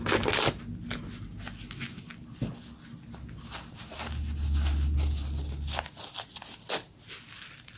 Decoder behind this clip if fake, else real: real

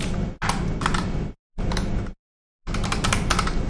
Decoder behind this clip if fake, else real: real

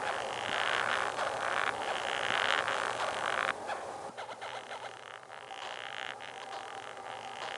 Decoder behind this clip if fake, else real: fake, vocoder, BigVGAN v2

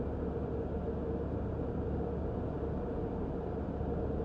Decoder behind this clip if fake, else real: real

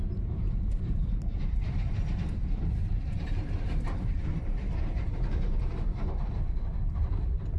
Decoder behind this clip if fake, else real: fake, vocoder, BigVGAN v2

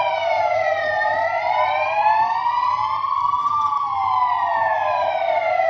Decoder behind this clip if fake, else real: fake, vocoder, BigVGAN v2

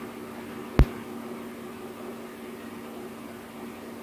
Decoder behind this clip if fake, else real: real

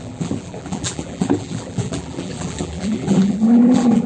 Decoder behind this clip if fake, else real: fake, vocoder, BigVGAN v2